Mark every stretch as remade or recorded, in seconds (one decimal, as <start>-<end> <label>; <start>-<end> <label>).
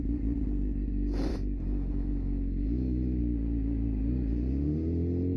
0.0-1.3 recorded; 1.3-3.2 remade; 3.2-5.4 recorded